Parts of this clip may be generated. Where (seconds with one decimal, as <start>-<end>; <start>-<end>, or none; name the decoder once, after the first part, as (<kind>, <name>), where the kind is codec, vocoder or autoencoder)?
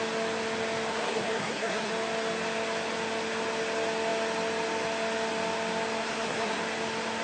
0.9-1.9 (codec, SNAC); 6.0-6.6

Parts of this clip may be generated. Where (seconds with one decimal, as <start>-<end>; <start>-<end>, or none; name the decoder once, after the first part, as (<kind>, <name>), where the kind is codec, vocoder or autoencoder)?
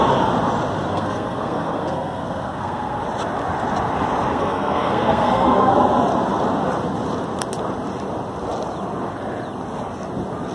0.9-3.0 (codec, SNAC); 4.3-5.7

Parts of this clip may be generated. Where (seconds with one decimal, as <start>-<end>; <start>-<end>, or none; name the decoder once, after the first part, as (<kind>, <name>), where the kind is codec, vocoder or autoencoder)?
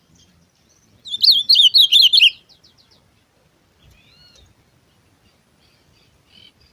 none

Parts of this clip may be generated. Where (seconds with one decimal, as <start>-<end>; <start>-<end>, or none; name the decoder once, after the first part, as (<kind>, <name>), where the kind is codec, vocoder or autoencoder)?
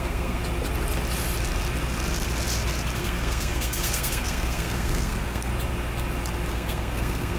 0.0-0.4 (codec, SNAC); 3.0-5.5; 6.5-7.4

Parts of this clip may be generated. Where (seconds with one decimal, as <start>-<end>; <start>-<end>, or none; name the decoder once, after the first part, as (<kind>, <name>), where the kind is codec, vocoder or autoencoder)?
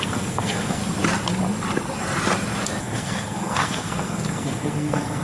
0.0-0.8 (codec, SNAC); 2.8-5.2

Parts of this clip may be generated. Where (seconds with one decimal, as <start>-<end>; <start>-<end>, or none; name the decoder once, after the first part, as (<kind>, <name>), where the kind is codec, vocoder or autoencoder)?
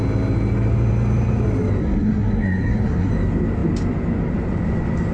1.8-3.1 (codec, SNAC)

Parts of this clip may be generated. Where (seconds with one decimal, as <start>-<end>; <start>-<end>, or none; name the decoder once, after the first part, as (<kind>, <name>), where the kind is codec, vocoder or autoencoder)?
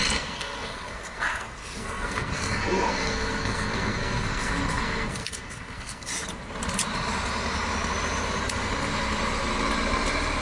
0.0-6.1 (codec, SNAC)